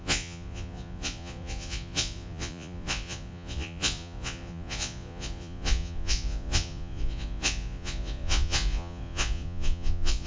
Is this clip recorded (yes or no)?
no